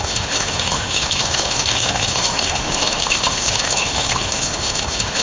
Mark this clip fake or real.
fake